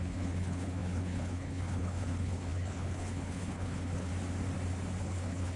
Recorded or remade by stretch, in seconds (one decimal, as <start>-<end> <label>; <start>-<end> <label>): 0.0-4.1 remade; 4.1-5.0 recorded; 5.0-5.6 remade